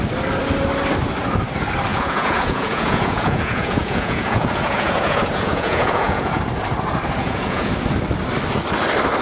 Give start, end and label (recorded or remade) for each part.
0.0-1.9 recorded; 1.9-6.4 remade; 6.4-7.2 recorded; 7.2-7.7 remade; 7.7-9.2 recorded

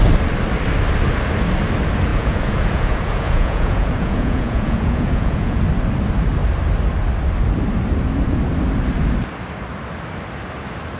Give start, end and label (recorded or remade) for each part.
0.0-2.1 recorded; 2.1-5.6 remade; 5.6-11.0 recorded

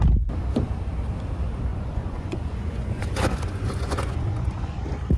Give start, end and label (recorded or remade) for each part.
0.0-1.7 recorded; 1.7-4.8 remade; 4.8-5.2 recorded

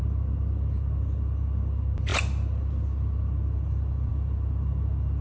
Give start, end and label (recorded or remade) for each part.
0.0-5.2 recorded

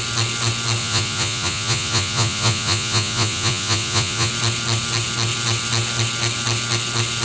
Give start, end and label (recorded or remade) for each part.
0.0-0.8 recorded; 0.8-4.3 remade; 4.3-7.2 recorded

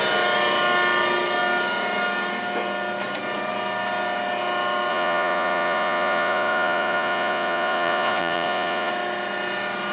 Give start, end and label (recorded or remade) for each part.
0.0-4.9 recorded; 4.9-8.9 remade; 8.9-9.9 recorded